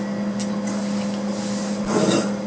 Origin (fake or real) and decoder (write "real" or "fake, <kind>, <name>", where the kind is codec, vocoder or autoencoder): real